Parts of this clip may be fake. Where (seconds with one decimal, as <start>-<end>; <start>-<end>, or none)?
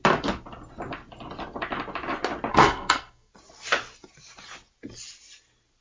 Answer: 2.5-3.3